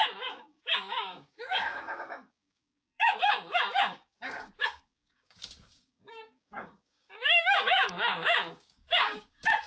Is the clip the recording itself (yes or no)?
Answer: no